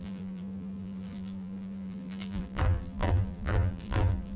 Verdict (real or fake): fake